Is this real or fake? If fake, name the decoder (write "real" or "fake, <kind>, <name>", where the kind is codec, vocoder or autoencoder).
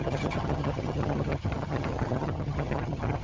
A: fake, vocoder, HiFi-GAN